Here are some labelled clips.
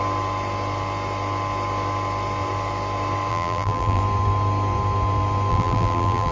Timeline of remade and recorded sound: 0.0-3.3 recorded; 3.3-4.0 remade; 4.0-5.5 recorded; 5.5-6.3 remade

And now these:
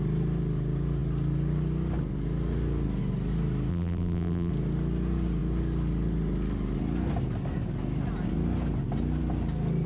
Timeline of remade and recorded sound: 0.0-3.7 recorded; 3.7-4.5 remade; 4.5-9.9 recorded

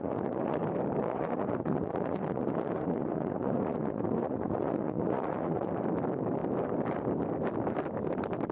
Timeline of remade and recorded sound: 0.0-0.6 remade; 0.6-1.0 recorded; 1.0-5.7 remade; 5.7-8.5 recorded

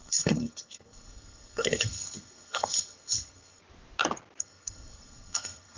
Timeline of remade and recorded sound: 0.0-3.6 remade; 3.6-4.4 recorded; 4.4-5.8 remade

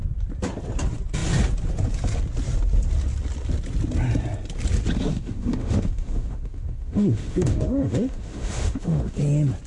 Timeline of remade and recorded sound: 0.0-5.1 recorded; 5.1-9.2 remade; 9.2-9.7 recorded

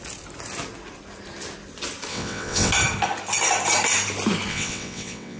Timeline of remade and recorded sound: 0.0-2.1 recorded; 2.1-2.7 remade; 2.7-4.5 recorded; 4.5-5.4 remade